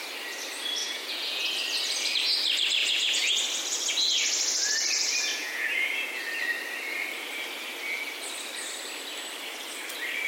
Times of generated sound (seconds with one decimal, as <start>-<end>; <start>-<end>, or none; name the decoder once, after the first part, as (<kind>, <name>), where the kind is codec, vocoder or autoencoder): 0.8-1.5 (vocoder, Vocos); 2.8-3.3; 5.3-6.2